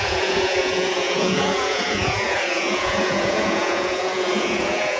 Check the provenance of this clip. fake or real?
fake